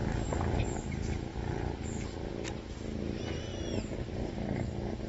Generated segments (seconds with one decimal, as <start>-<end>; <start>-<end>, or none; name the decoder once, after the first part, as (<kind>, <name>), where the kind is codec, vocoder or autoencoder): 3.5-4.3 (vocoder, BigVGAN v2)